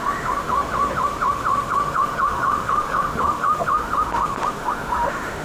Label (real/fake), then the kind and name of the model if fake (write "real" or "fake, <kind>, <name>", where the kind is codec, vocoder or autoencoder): fake, autoencoder, DAC-VAE